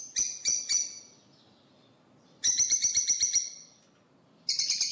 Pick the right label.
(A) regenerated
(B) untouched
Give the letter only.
B